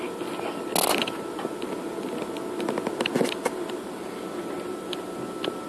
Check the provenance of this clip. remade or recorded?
recorded